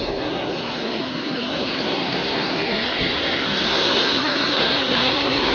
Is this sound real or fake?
fake